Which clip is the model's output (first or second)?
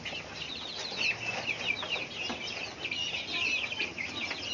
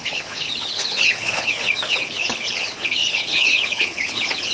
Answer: second